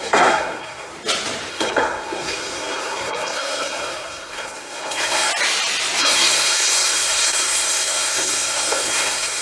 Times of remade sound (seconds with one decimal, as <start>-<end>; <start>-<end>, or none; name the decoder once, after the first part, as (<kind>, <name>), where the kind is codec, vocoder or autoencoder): 0.0-0.9 (codec, SNAC); 1.5-5.3; 6.0-9.4